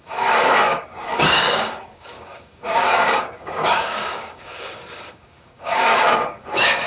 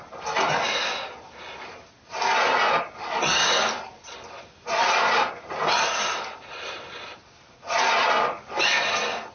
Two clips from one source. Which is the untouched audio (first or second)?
second